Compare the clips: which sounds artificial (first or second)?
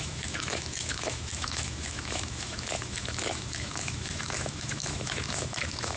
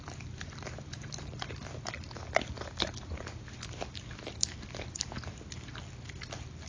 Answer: first